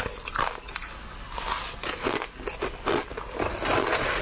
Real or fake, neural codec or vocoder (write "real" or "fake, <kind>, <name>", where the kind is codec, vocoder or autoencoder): real